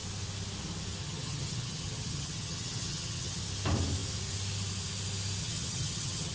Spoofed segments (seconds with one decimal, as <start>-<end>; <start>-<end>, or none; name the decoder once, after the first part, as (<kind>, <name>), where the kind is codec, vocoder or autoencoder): 1.0-3.4 (vocoder, HiFi-GAN); 5.4-6.3